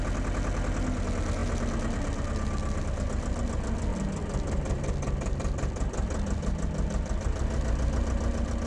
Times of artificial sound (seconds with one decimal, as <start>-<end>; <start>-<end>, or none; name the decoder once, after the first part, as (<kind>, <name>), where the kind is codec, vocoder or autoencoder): 3.9-8.7 (vocoder, BigVGAN v2)

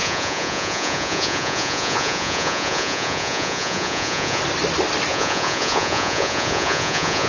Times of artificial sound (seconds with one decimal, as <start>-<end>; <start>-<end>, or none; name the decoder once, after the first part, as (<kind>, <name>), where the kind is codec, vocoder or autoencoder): 0.0-4.4 (vocoder, Vocos); 5.1-7.3

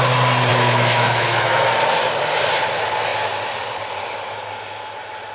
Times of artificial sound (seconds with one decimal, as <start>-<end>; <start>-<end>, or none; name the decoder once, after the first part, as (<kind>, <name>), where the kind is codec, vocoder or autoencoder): 0.5-1.7 (autoencoder, DAC-VAE)

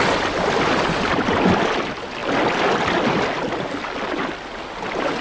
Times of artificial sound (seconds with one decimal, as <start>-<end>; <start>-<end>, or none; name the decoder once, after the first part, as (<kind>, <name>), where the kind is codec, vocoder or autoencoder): none

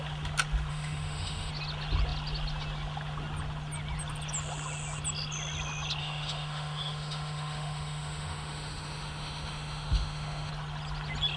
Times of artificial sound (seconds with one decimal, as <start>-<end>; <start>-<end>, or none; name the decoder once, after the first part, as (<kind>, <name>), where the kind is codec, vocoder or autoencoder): 0.7-1.5 (autoencoder, DAC-VAE); 6.0-10.5

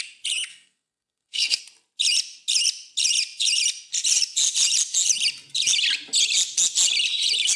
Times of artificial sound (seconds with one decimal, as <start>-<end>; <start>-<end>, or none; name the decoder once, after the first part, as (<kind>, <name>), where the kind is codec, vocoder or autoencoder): 0.5-1.6 (codec, SNAC)

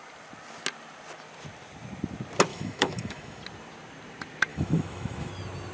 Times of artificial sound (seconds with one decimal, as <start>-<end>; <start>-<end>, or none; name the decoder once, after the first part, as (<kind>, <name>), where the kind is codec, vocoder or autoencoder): 2.5-3.4 (autoencoder, DAC-VAE); 4.5-5.3